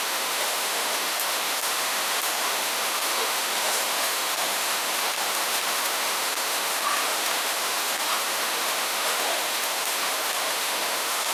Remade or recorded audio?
remade